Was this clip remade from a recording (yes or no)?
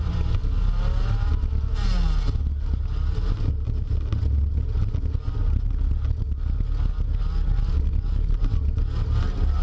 no